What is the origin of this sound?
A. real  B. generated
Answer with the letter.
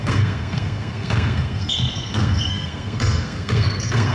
B